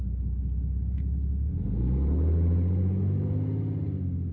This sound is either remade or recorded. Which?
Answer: recorded